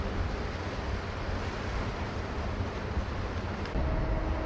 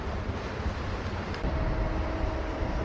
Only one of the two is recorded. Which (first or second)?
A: first